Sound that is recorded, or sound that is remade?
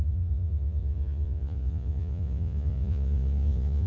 remade